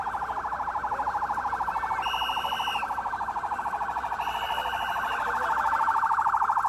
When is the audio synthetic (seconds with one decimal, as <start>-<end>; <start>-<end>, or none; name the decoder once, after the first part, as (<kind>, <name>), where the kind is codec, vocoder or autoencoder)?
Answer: none